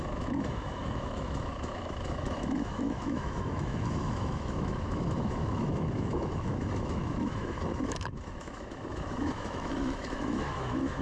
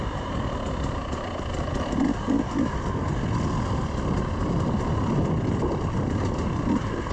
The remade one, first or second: first